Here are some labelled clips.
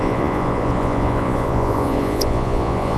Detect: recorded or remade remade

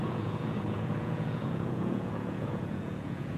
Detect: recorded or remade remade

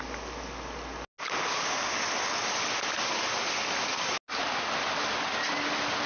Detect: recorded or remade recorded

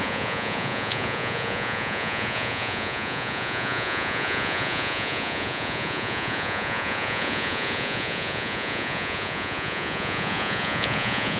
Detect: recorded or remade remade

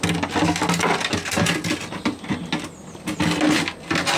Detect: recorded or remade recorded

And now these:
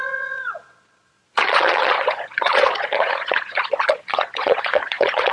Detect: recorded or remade remade